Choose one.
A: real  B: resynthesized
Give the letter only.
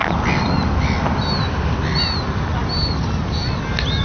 A